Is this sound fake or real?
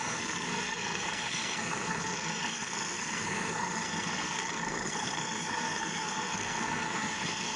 fake